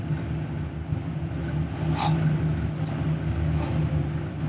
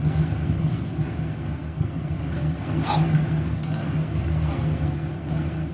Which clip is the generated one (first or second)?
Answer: second